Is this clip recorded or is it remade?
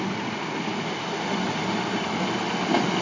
recorded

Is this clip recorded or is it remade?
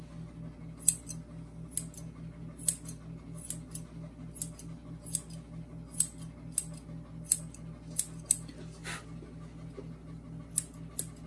recorded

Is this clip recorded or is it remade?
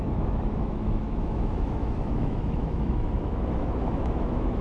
remade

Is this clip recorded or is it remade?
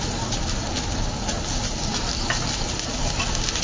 recorded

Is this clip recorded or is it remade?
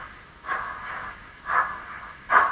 recorded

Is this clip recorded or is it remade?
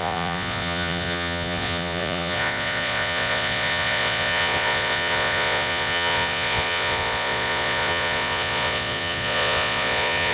remade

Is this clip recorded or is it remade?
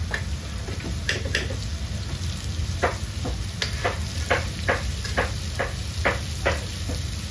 recorded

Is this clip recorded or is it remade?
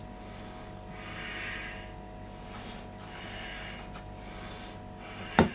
recorded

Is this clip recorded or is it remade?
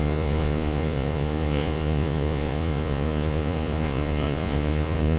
remade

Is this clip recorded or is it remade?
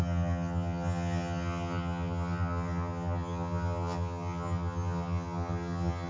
remade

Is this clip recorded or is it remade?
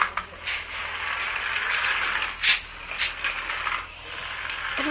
recorded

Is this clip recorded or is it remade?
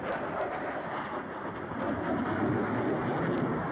recorded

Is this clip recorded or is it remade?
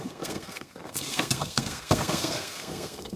remade